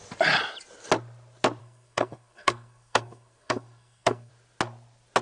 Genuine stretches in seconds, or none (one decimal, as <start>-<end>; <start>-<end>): 0.0-1.6; 4.3-5.2